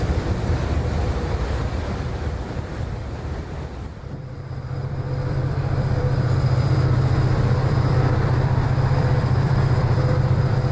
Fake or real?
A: fake